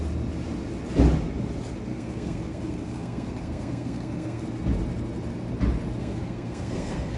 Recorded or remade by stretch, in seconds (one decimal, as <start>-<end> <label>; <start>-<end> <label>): 0.0-1.9 recorded; 1.9-4.4 remade; 4.4-6.0 recorded; 6.0-7.2 remade

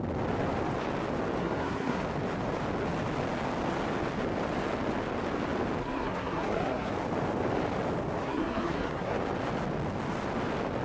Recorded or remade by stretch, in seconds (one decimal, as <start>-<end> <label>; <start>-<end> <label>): 0.0-1.4 recorded; 1.4-2.0 remade; 2.0-5.8 recorded; 5.8-6.9 remade; 6.9-8.2 recorded; 8.2-9.2 remade; 9.2-10.8 recorded

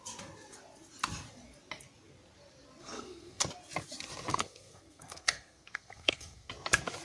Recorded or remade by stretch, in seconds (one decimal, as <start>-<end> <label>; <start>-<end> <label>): 0.0-2.8 recorded; 2.8-3.4 remade; 3.4-4.3 recorded; 4.3-6.5 remade; 6.5-7.0 recorded

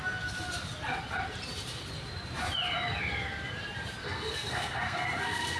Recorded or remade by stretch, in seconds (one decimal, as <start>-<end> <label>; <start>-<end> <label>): 0.0-4.0 recorded; 4.0-5.6 remade